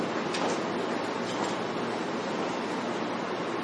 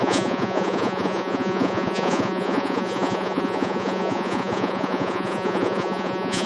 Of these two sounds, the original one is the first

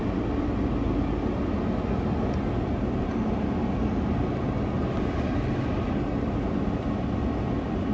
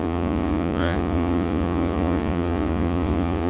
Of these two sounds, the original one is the first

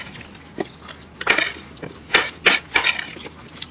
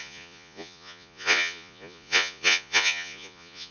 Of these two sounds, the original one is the first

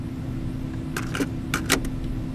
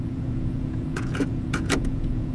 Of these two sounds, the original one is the first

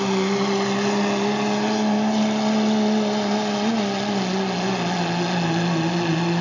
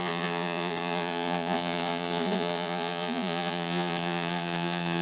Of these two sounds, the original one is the first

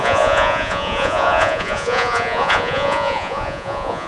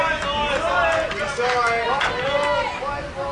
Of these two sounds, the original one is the second